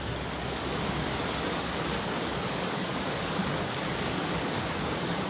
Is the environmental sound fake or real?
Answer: fake